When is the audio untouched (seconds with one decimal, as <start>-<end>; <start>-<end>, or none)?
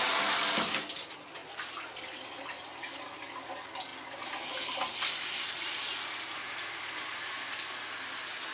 0.0-8.5